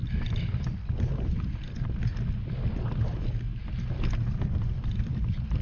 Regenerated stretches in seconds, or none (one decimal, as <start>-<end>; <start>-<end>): none